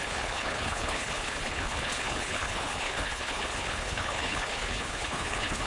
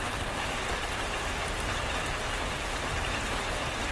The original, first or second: second